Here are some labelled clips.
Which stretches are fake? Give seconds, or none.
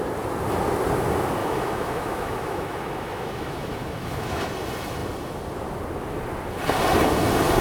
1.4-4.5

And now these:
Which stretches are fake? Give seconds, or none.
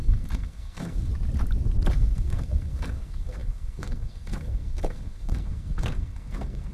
0.0-1.1; 1.9-6.7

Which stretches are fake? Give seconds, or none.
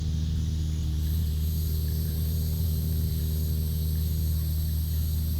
0.8-3.2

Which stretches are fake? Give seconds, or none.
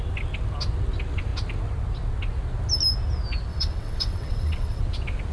3.5-4.8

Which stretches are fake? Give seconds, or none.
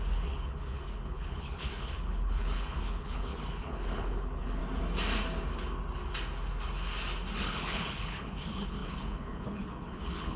0.0-4.6; 7.4-10.4